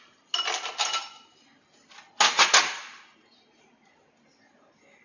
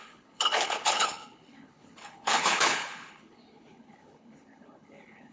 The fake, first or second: second